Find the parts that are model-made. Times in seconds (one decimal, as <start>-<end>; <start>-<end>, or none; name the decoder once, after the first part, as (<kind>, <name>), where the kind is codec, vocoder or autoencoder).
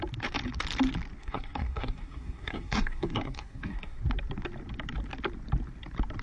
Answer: 1.2-4.0 (codec, SNAC)